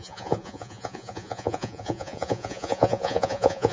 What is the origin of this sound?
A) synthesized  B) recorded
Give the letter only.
A